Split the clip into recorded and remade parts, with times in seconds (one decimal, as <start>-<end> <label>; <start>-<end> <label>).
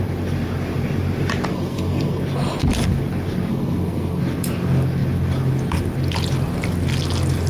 0.0-1.5 recorded; 1.5-2.2 remade; 2.2-3.5 recorded; 3.5-4.2 remade; 4.2-7.5 recorded